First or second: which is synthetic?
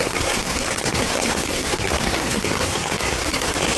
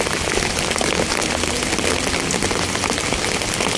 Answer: first